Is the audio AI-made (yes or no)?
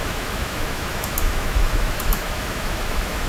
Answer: yes